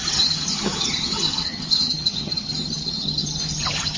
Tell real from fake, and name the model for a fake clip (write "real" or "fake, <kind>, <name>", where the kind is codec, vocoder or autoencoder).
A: fake, vocoder, HiFi-GAN